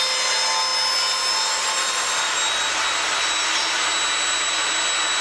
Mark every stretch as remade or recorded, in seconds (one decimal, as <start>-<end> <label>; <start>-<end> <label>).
0.0-5.2 recorded

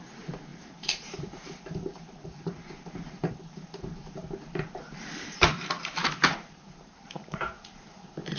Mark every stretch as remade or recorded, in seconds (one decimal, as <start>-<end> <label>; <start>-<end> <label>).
0.0-4.2 remade; 4.2-4.8 recorded; 4.8-8.4 remade

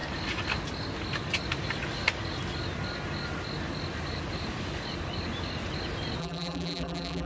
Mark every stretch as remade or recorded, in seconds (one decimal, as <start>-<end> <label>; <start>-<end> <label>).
0.0-6.2 recorded; 6.2-7.3 remade

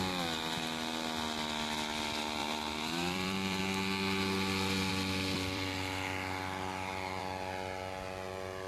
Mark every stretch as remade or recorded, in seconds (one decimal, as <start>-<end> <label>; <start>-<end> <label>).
0.0-2.4 recorded; 2.4-3.6 remade; 3.6-4.9 recorded; 4.9-7.2 remade; 7.2-8.7 recorded

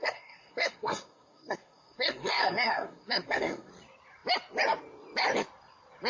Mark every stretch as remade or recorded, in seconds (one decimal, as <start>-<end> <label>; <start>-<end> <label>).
0.0-3.7 remade; 3.7-6.1 recorded